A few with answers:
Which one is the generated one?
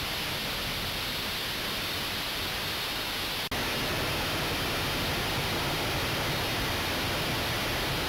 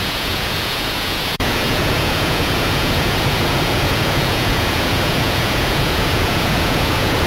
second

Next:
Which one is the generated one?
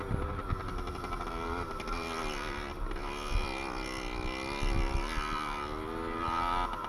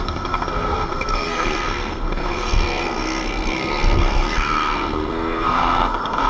second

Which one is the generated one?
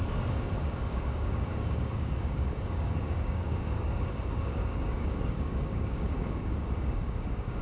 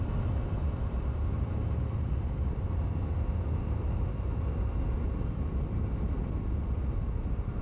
first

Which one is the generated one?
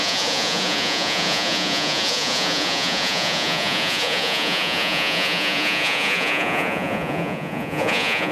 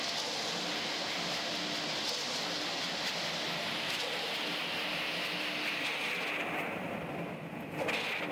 first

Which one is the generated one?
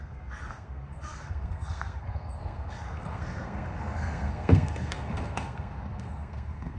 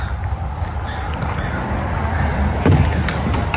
first